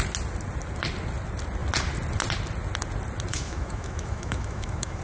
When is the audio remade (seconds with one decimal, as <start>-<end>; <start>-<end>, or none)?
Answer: 3.3-5.0